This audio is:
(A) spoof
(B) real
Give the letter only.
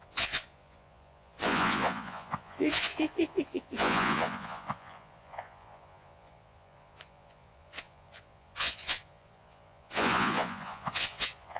A